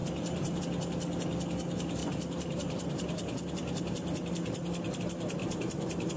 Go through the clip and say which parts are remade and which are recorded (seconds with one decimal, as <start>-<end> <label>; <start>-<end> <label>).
0.0-0.6 remade; 0.6-5.4 recorded; 5.4-6.2 remade